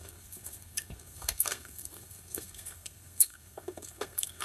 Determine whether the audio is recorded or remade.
remade